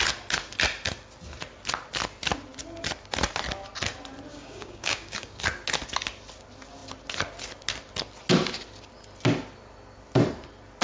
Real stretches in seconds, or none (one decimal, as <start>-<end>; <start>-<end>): 0.0-4.3; 5.4-10.8